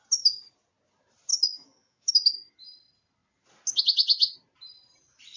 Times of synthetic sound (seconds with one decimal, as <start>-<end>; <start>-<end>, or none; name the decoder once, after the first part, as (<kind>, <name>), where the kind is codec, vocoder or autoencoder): 1.3-2.1 (autoencoder, DAC-VAE)